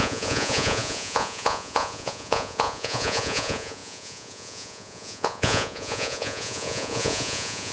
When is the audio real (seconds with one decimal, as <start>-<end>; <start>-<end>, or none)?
none